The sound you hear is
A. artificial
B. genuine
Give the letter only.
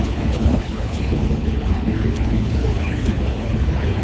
A